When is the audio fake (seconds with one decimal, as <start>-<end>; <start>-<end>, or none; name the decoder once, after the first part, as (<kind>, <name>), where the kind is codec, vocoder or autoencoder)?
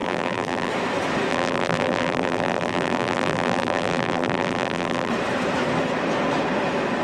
0.0-0.7 (vocoder, BigVGAN v2); 1.3-5.1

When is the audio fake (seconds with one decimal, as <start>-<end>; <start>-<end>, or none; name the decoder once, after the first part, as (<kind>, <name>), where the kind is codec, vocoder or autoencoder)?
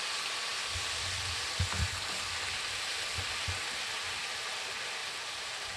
5.0-5.8 (vocoder, BigVGAN v2)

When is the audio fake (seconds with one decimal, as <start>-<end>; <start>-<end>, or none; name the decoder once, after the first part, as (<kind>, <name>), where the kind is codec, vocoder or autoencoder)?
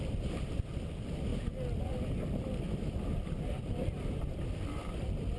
none